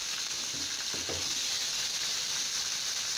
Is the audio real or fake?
real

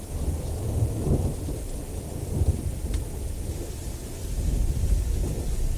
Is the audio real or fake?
real